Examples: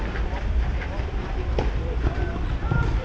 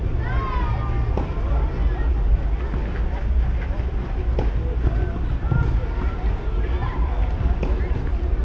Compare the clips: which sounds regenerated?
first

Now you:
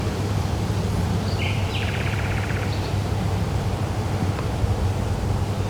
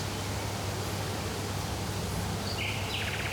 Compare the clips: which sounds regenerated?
first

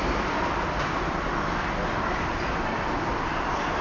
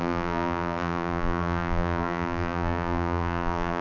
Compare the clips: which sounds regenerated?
second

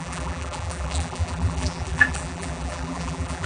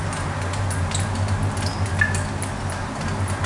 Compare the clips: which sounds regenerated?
first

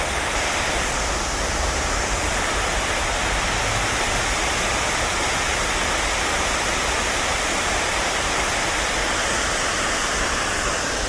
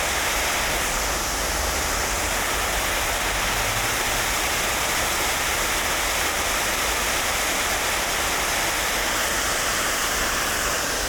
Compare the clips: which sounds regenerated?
first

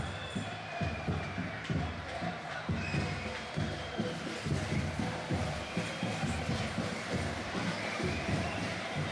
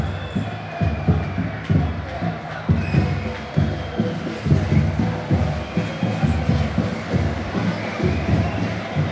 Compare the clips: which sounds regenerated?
first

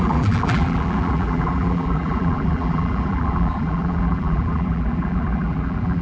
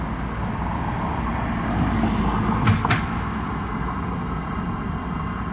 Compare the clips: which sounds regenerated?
first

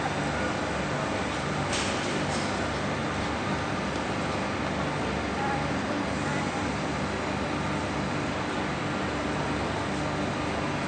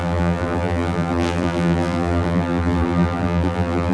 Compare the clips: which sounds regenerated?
second